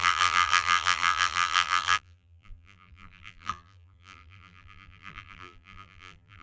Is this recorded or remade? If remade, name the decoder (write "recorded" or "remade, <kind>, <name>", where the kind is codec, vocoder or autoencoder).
remade, vocoder, BigVGAN v2